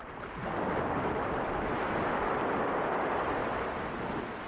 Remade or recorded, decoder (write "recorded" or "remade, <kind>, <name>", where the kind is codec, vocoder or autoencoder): remade, vocoder, BigVGAN v2